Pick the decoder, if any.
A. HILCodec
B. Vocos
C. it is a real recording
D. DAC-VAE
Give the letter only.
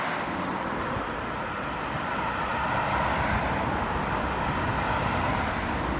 C